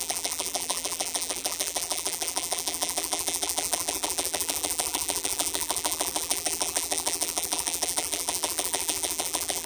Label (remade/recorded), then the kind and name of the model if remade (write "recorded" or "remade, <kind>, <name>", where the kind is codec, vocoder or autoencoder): remade, vocoder, BigVGAN v2